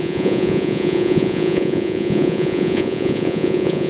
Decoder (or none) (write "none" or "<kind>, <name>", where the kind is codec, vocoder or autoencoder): vocoder, Vocos